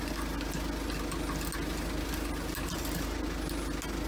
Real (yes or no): yes